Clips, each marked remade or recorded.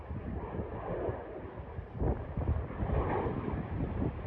recorded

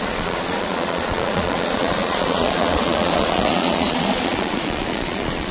remade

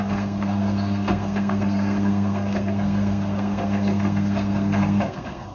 remade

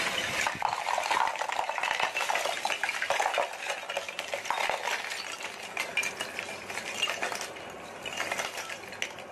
recorded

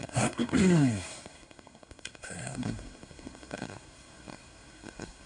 remade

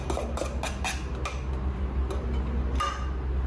recorded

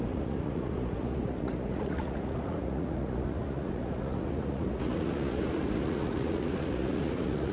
remade